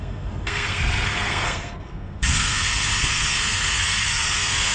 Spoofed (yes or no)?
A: yes